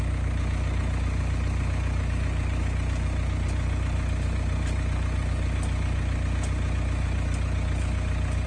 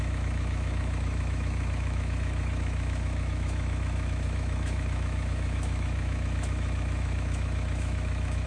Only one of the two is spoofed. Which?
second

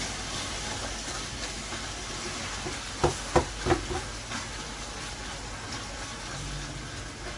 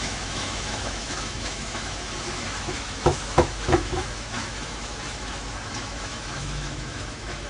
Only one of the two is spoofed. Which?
second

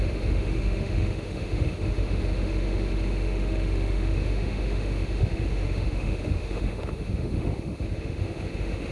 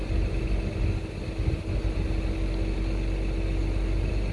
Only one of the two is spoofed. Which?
first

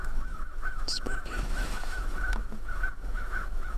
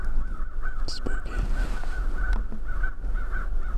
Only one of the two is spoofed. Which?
first